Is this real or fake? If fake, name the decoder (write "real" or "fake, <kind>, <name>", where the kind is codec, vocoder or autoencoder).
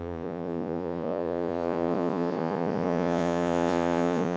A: fake, vocoder, Vocos